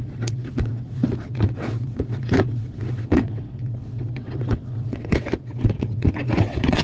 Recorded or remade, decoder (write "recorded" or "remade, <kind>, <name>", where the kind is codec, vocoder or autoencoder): remade, vocoder, WaveNeXt